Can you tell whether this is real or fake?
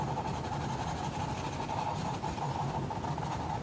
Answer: real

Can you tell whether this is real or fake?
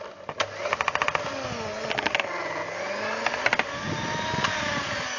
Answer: real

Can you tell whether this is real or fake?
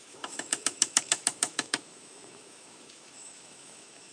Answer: fake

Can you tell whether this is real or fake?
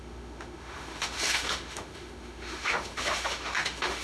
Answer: fake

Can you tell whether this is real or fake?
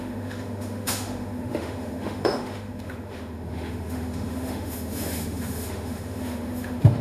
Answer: fake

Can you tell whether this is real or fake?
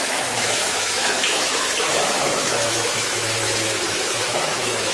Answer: fake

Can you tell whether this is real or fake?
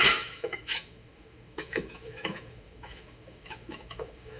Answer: fake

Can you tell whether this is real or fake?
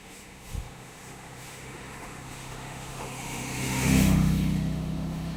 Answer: fake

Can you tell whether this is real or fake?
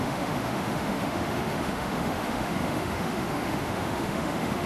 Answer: fake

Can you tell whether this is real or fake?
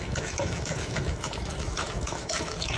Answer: fake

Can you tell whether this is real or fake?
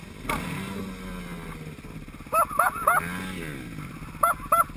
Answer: real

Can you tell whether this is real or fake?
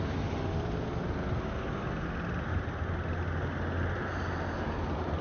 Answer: real